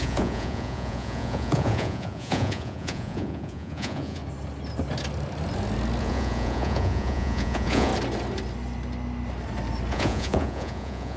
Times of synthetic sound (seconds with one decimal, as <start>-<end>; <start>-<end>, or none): 0.0-4.2; 6.0-7.9; 9.9-11.2